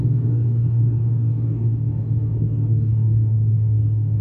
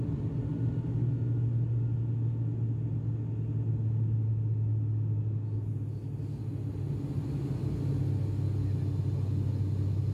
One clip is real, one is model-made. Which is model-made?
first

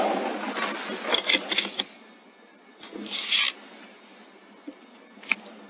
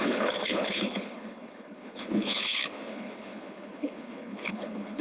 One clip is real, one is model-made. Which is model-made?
second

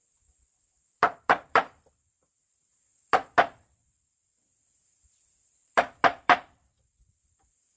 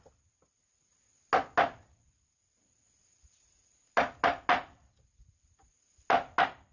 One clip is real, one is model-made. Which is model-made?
first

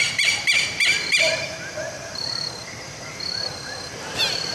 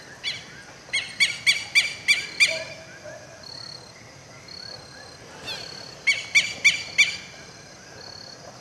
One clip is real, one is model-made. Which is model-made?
first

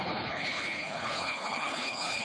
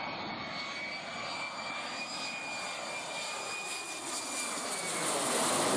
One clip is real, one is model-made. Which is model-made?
first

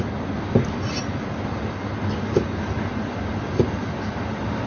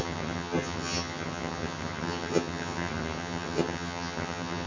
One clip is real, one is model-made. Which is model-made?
second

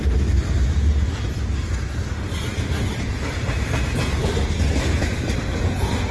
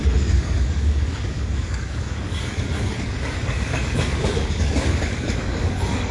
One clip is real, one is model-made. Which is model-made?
second